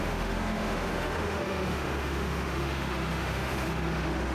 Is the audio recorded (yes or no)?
no